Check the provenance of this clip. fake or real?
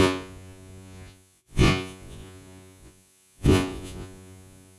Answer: fake